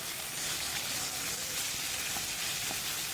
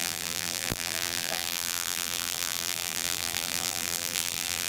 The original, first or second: first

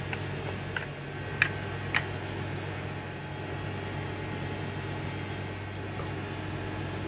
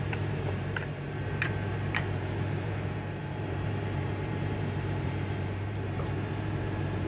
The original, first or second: first